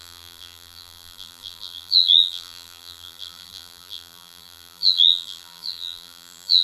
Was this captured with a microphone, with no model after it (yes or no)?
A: no